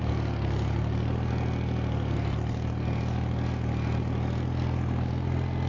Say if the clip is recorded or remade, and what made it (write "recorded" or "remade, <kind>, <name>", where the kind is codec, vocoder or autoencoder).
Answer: recorded